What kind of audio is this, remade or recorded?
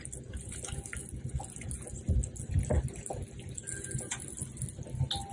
recorded